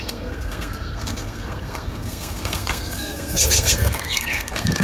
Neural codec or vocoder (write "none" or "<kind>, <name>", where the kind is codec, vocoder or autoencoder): codec, SNAC